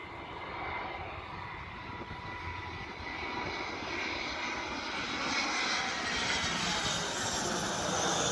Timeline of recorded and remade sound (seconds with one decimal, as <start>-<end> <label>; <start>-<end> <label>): 0.0-8.3 recorded